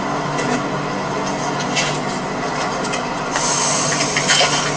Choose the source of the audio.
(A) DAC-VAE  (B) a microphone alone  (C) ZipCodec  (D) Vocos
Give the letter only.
B